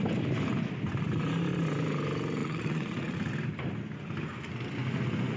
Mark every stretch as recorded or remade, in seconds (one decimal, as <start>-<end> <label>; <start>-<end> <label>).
0.0-2.4 recorded; 2.4-3.3 remade; 3.3-5.4 recorded